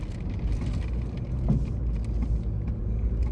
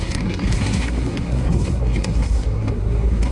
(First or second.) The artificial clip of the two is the second